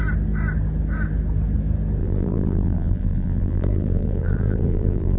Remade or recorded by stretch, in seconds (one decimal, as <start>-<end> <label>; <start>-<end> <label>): 0.0-2.0 recorded; 2.0-5.2 remade